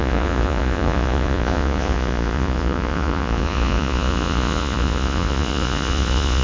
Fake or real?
fake